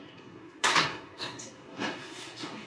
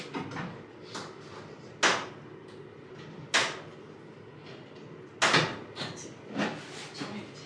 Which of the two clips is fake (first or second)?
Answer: first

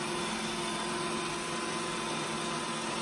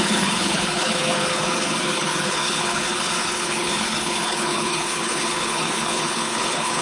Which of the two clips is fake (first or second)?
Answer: second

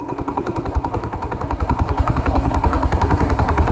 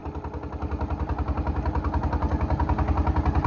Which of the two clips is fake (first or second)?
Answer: first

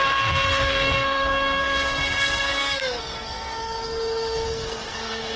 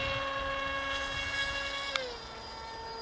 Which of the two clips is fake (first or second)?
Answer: first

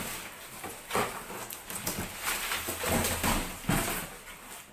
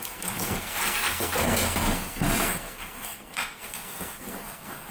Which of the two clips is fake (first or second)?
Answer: second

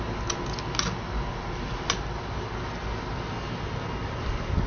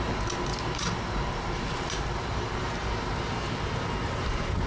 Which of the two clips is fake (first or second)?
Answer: second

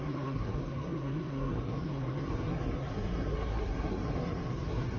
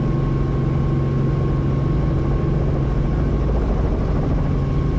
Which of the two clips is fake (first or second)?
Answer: first